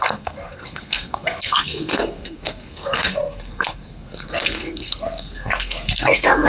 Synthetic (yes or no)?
yes